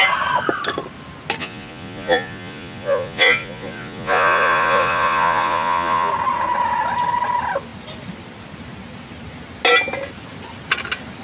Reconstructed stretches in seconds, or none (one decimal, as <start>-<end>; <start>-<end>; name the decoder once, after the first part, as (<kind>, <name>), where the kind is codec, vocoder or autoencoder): 1.4-6.1 (vocoder, Vocos)